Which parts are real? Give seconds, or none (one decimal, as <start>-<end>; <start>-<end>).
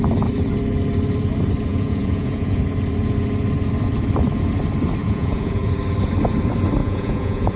0.0-1.7; 2.6-5.0; 5.7-6.8